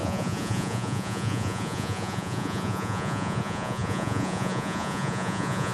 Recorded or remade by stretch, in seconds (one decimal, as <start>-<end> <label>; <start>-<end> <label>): 0.0-5.7 remade